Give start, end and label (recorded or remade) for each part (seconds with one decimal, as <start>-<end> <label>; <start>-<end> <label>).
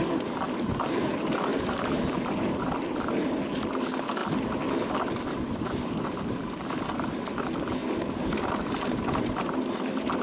0.0-1.5 recorded; 1.5-2.6 remade; 2.6-10.2 recorded